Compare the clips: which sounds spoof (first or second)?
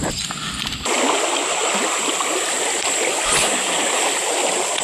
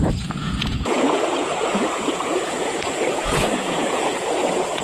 second